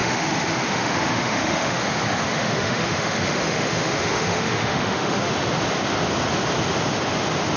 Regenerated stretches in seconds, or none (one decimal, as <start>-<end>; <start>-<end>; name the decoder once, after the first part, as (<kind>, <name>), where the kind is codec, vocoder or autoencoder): 0.0-1.8 (autoencoder, DAC-VAE); 2.2-5.3

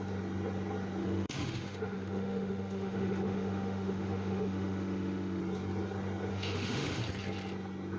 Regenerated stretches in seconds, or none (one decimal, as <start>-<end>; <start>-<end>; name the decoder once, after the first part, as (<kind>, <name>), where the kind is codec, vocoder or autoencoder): 1.0-5.4 (autoencoder, DAC-VAE); 6.3-7.0